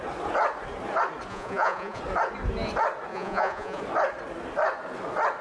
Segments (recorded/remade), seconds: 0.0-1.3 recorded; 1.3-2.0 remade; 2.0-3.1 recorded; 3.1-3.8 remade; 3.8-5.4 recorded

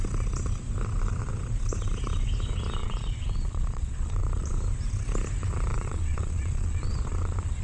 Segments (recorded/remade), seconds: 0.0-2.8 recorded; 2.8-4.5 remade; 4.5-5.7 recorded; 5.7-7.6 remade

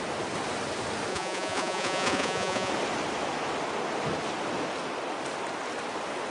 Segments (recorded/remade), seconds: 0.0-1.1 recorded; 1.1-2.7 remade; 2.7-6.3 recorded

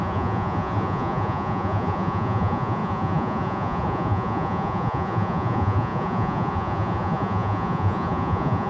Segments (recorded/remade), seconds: 0.0-8.7 remade

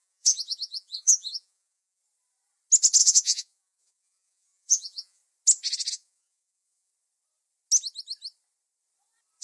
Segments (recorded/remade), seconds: 0.0-2.0 remade; 2.0-3.0 recorded; 3.0-5.2 remade; 5.2-5.9 recorded; 5.9-6.9 remade; 6.9-9.4 recorded